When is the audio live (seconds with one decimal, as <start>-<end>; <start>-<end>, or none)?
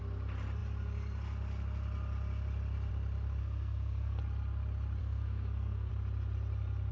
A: 0.0-3.4; 4.2-5.0; 5.9-6.9